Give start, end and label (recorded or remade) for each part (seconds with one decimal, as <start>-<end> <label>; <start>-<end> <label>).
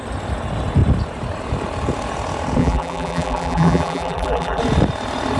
0.0-2.6 recorded; 2.6-4.6 remade; 4.6-5.4 recorded